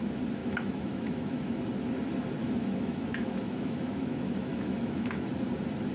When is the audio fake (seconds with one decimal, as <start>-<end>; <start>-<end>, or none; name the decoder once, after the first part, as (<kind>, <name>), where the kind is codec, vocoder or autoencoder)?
0.4-1.6 (autoencoder, DAC-VAE); 2.4-5.3